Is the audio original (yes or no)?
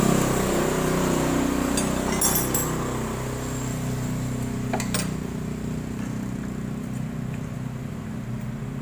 yes